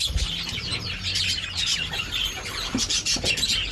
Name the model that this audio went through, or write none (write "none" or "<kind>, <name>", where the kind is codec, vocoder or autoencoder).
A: none